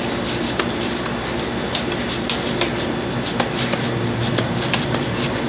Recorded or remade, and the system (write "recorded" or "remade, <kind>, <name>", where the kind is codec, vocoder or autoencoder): recorded